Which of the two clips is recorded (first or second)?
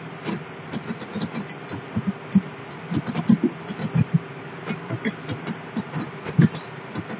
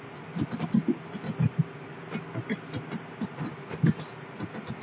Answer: second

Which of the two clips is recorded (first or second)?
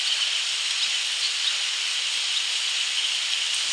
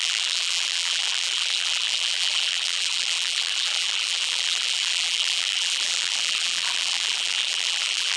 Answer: first